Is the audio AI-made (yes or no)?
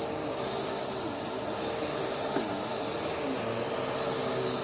no